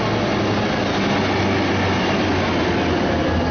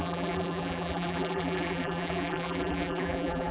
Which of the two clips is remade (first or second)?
second